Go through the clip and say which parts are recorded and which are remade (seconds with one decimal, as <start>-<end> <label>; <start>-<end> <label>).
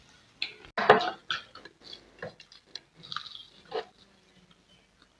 0.0-5.2 recorded